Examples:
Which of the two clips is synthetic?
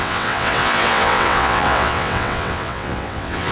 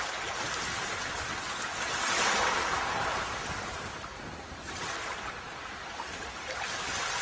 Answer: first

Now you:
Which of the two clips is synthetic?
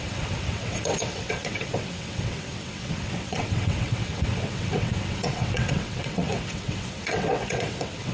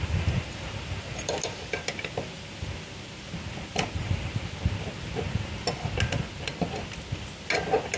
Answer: first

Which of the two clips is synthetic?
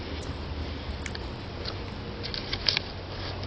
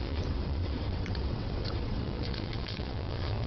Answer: second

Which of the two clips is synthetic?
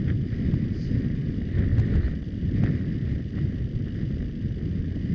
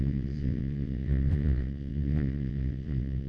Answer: second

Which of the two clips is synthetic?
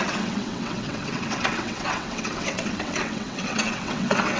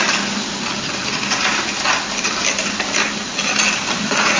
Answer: first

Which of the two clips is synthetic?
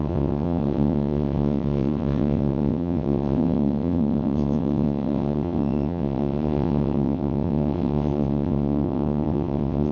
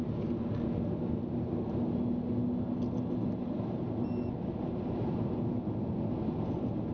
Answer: first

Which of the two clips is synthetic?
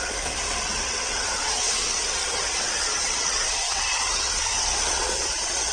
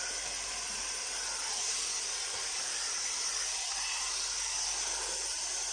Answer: first